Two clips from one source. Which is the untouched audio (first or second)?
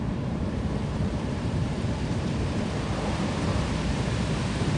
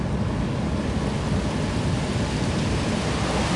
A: second